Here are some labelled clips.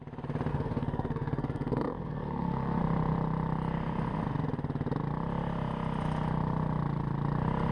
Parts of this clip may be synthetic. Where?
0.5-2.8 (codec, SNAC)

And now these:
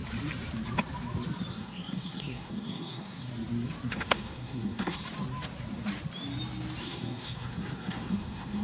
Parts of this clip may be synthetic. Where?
1.5-3.3 (codec, SNAC); 3.9-5.0; 6.8-8.6

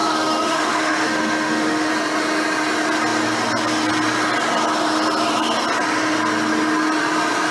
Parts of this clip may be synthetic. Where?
0.0-1.9 (autoencoder, DAC-VAE)

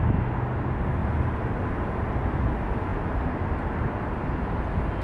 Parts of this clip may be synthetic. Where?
1.0-2.0 (vocoder, BigVGAN v2)